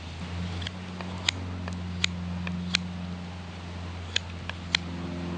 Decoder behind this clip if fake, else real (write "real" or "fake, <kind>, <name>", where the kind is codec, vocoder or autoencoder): real